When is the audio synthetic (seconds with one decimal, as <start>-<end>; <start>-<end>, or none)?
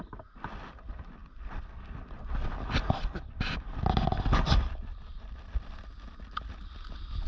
none